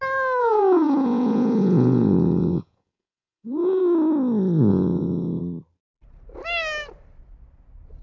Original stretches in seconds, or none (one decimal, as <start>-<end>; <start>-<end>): 0.0-0.4; 3.8-4.7; 5.4-8.0